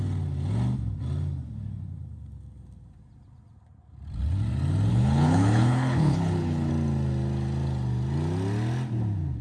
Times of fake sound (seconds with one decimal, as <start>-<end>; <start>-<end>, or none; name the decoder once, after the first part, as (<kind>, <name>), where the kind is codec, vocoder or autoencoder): 4.9-6.7 (codec, HILCodec)